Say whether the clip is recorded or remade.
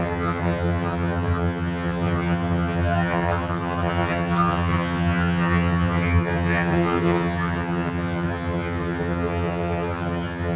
remade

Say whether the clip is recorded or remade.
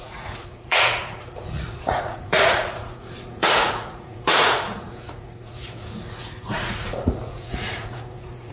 remade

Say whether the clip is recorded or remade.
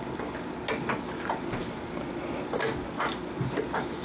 recorded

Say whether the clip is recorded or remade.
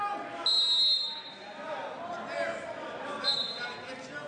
recorded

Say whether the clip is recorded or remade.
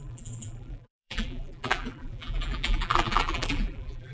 remade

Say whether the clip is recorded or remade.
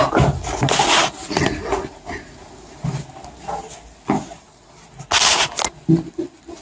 recorded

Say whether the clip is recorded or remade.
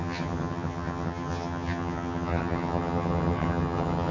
remade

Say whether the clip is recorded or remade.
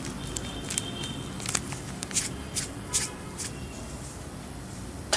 recorded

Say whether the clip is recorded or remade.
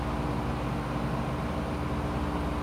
recorded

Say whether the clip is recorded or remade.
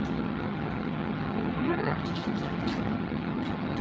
remade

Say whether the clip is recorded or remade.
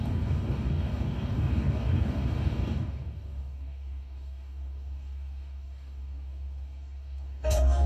remade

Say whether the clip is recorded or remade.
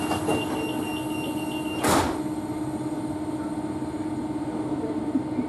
recorded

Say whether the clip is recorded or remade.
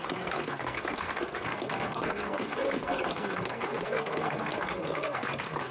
remade